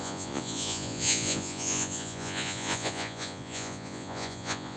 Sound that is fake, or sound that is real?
fake